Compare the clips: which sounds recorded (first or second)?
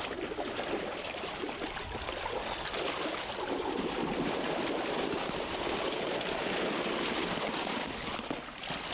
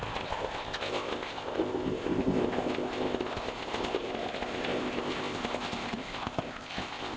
first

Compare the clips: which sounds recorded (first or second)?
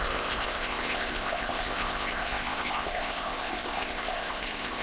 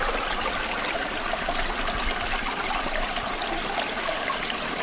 second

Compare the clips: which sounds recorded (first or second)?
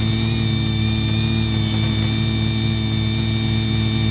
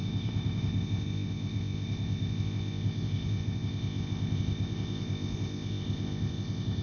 first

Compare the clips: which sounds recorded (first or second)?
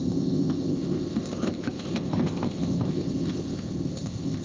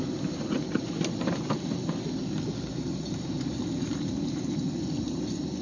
second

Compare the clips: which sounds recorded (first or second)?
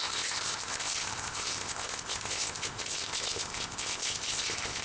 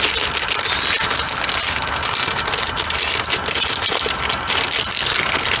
second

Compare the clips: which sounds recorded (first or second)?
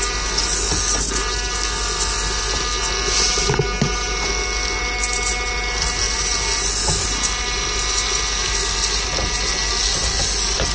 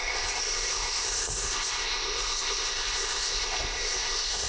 first